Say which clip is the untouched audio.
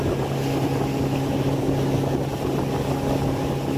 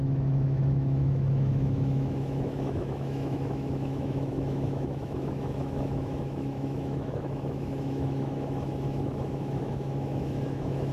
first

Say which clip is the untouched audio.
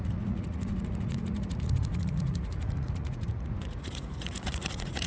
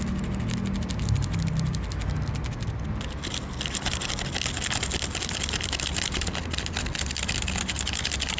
second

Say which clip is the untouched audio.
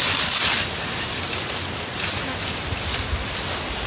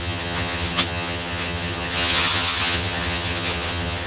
first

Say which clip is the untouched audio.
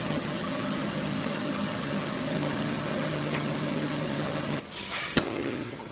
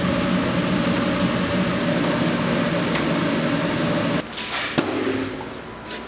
second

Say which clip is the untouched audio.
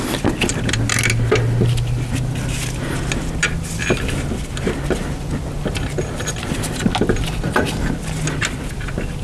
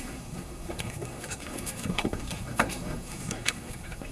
first